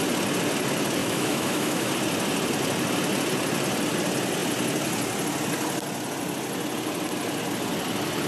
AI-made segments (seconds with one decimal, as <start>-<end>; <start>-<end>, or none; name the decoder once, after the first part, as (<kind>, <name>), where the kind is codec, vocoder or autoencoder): 1.0-1.9 (autoencoder, DAC-VAE)